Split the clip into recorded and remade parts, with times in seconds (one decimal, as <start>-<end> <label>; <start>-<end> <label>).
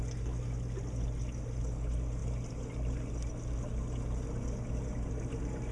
0.0-5.7 recorded